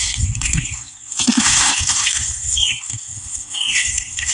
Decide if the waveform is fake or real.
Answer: fake